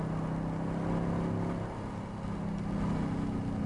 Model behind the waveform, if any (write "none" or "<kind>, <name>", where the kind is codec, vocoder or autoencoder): none